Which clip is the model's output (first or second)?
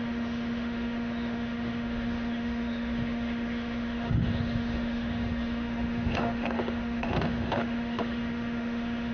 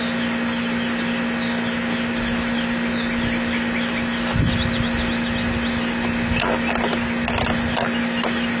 first